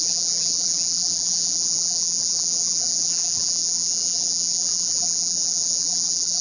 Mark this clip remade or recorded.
remade